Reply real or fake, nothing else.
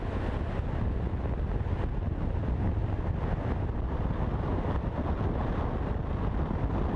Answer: real